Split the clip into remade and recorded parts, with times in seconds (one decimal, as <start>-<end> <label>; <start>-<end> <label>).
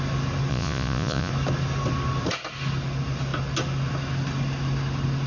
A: 0.0-0.5 recorded; 0.5-1.3 remade; 1.3-5.3 recorded